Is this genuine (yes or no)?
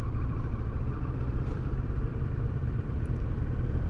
no